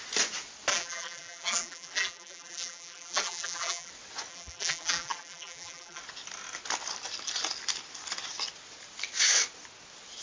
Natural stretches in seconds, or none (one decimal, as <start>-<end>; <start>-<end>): 0.0-0.7; 3.9-4.3; 6.0-10.2